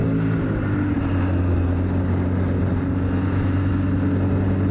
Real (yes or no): yes